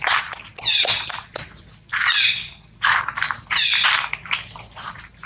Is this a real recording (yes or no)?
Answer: yes